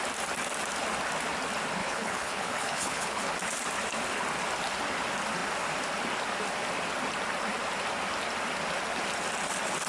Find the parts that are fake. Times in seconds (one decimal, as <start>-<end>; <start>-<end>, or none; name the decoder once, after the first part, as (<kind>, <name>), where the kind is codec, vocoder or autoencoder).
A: 1.8-3.2 (codec, HILCodec)